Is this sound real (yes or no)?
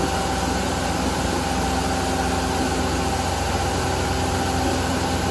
yes